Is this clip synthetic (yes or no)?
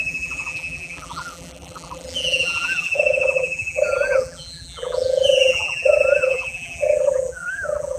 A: yes